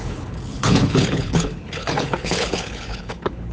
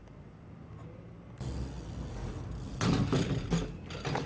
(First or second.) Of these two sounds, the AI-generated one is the first